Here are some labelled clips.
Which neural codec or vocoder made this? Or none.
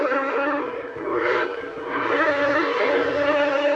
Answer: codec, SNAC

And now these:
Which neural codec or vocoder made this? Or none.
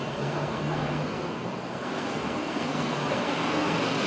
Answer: codec, SNAC